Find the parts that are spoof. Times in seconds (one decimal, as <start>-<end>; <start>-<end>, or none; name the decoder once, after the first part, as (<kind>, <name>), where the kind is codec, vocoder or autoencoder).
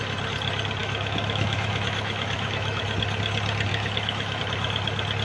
0.8-2.8 (autoencoder, DAC-VAE); 3.7-4.4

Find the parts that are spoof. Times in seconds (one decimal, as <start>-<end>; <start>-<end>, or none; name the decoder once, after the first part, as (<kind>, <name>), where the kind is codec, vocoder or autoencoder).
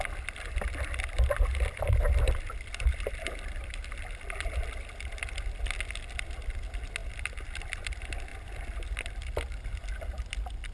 8.3-8.9 (vocoder, BigVGAN v2)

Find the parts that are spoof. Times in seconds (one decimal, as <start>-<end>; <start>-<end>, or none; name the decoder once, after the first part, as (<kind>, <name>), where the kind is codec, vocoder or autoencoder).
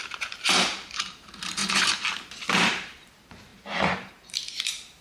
0.0-1.6 (vocoder, BigVGAN v2); 2.5-5.0